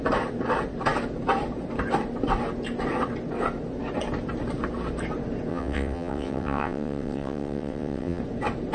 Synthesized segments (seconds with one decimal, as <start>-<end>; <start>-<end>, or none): 5.5-8.2